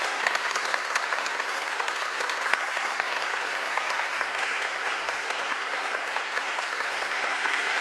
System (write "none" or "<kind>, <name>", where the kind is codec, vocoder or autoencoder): codec, SNAC